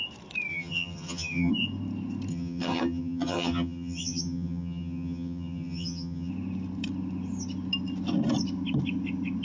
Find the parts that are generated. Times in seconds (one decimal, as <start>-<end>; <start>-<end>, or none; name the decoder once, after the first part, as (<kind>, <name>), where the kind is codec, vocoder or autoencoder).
0.5-1.5 (vocoder, HiFi-GAN); 2.3-6.3